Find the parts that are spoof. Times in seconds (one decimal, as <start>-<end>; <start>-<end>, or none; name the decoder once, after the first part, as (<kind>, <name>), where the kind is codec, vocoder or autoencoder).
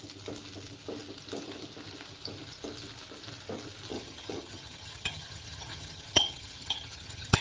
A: 3.9-7.4 (vocoder, HiFi-GAN)